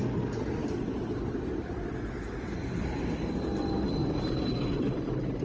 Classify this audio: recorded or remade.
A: recorded